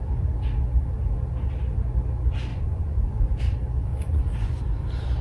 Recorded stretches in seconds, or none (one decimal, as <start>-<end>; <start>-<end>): 0.0-2.5; 3.4-3.9; 4.6-5.2